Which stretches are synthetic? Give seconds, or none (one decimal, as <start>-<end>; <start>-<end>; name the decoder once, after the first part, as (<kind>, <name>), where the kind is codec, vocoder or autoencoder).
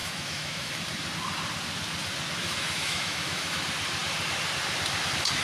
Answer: 0.0-0.7 (autoencoder, DAC-VAE); 2.4-3.6